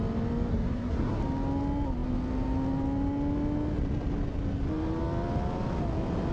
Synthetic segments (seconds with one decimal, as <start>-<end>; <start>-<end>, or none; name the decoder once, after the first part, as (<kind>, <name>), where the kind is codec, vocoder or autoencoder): 0.5-1.2 (codec, SNAC)